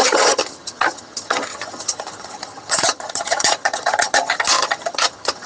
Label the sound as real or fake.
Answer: fake